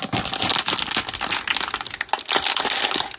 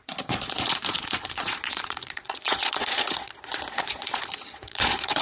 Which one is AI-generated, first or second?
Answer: second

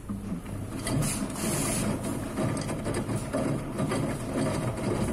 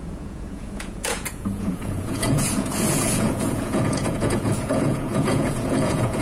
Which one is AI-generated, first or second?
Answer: second